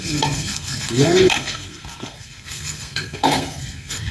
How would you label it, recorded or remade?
remade